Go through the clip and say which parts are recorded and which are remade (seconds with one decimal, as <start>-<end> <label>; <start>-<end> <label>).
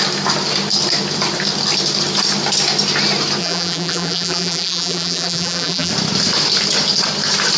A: 0.0-3.4 recorded; 3.4-5.9 remade; 5.9-7.6 recorded